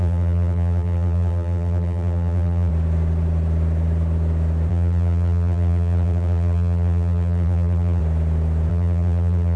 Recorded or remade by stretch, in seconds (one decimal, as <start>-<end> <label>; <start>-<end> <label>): 0.0-2.7 remade; 2.7-4.7 recorded; 4.7-8.0 remade; 8.0-8.7 recorded; 8.7-9.6 remade